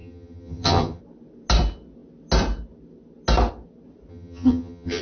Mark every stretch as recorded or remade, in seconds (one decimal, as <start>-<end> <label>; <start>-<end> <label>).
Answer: 0.0-1.0 remade; 1.0-4.1 recorded; 4.1-5.0 remade